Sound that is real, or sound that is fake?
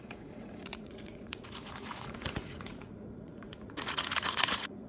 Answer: fake